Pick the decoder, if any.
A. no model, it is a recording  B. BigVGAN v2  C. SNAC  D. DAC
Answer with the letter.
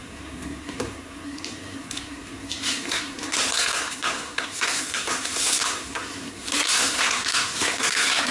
C